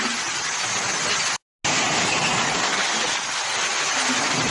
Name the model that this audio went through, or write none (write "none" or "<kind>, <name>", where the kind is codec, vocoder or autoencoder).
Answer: none